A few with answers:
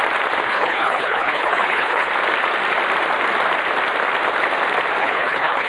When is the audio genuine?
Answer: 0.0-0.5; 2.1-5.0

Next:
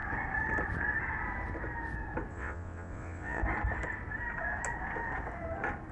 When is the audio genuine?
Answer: 0.0-2.3; 3.4-5.9

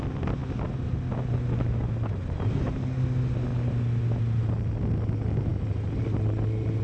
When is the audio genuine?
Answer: 0.0-6.8

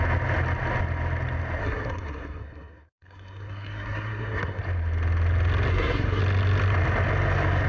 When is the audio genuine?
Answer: 0.0-1.6; 4.6-5.7; 6.2-7.7

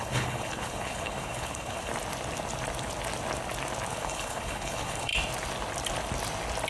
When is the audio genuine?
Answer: 1.9-3.9; 5.1-6.7

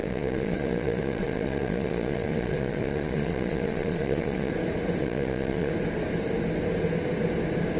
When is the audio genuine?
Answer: 4.5-5.0; 5.7-7.8